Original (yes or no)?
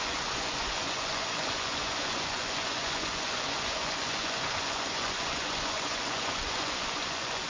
no